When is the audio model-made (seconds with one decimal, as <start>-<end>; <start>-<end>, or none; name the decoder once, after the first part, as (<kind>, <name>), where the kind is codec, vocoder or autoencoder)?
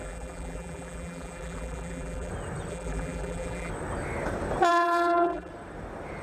0.0-2.3 (vocoder, BigVGAN v2); 2.7-3.7; 4.7-5.5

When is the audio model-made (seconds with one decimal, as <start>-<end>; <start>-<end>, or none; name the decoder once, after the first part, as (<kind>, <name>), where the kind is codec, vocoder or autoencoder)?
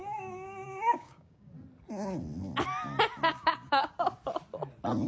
0.0-1.5 (codec, DAC); 3.3-3.9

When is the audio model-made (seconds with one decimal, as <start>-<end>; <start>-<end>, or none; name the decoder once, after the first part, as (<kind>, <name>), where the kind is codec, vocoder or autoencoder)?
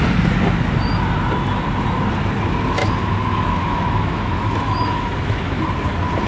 2.8-5.6 (autoencoder, DAC-VAE)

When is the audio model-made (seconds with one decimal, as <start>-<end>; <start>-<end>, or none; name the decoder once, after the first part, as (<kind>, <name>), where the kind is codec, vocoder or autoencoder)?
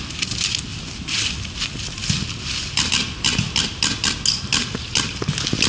none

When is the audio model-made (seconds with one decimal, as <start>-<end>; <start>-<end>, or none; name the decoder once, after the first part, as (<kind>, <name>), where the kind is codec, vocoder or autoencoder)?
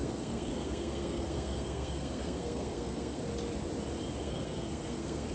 0.0-3.2 (codec, SNAC); 4.2-5.3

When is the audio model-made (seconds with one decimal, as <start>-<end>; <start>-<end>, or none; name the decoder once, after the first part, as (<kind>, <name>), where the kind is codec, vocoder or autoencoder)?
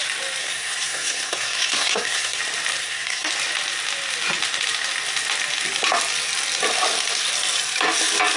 0.4-2.4 (codec, SNAC); 2.8-3.3